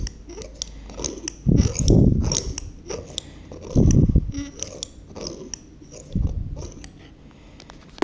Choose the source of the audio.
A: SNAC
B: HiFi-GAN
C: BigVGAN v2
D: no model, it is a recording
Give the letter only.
D